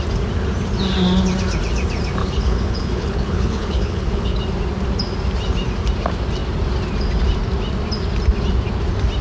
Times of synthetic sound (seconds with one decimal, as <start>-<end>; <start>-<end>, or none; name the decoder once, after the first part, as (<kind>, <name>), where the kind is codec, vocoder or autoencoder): 2.2-4.4 (codec, HILCodec)